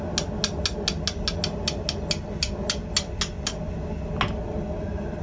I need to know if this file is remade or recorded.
recorded